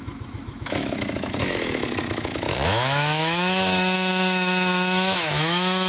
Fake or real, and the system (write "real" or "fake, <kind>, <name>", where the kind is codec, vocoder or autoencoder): fake, autoencoder, DAC-VAE